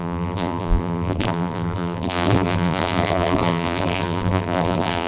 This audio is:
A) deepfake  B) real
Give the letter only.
A